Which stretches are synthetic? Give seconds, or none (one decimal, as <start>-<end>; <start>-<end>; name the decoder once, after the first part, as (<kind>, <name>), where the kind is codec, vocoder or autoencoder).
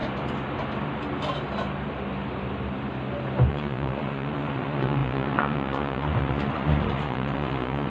3.5-7.9 (vocoder, Vocos)